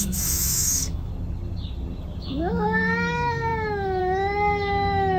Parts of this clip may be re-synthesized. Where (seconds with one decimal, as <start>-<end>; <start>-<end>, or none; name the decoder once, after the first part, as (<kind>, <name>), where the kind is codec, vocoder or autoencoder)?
0.0-1.1 (autoencoder, DAC-VAE); 2.2-5.2